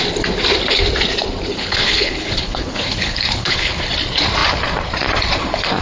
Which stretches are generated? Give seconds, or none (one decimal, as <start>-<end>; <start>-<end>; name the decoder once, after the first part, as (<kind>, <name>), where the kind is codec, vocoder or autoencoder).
1.5-3.8 (codec, HILCodec)